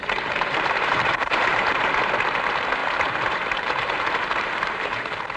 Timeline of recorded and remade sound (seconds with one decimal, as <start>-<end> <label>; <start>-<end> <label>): 0.0-2.2 remade; 2.2-2.8 recorded; 2.8-5.0 remade; 5.0-5.4 recorded